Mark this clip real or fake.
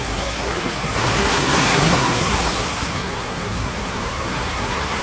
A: fake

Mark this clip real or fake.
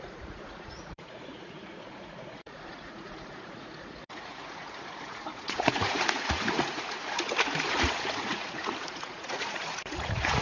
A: fake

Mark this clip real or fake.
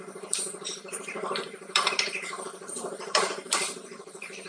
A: fake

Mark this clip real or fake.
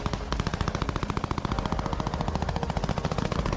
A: real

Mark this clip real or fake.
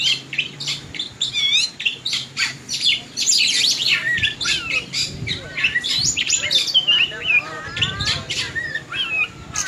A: fake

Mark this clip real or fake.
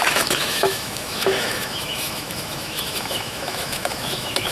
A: fake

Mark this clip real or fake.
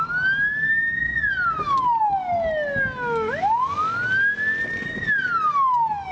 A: real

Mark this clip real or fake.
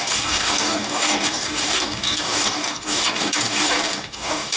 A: fake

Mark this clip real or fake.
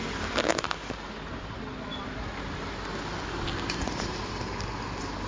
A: real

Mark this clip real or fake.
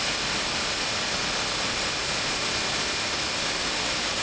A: real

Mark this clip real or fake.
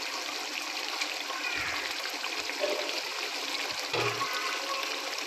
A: real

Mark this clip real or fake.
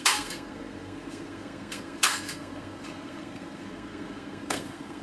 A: fake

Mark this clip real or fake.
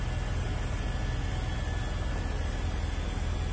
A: real